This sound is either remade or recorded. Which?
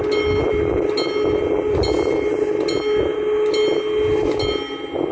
recorded